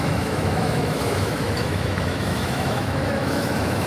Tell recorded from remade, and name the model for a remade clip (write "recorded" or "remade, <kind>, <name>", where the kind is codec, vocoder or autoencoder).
remade, autoencoder, DAC-VAE